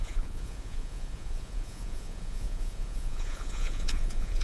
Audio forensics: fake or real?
fake